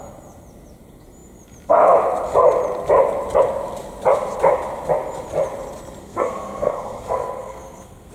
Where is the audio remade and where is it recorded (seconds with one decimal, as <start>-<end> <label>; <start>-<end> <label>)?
0.0-6.0 recorded; 6.0-8.1 remade